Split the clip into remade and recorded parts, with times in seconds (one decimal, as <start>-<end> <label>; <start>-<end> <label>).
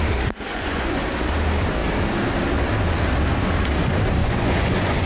0.0-0.5 recorded; 0.5-1.0 remade; 1.0-4.2 recorded; 4.2-5.1 remade